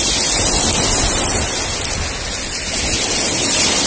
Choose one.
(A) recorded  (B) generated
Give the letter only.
A